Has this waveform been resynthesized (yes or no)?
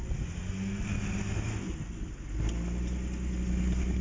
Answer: no